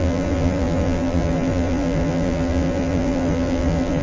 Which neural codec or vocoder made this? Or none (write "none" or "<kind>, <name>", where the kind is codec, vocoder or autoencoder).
vocoder, BigVGAN v2